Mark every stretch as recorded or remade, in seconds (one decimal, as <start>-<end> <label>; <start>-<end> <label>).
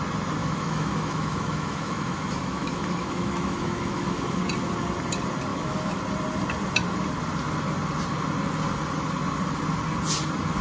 0.0-0.4 recorded; 0.4-4.4 remade; 4.4-5.5 recorded; 5.5-6.0 remade; 6.0-10.6 recorded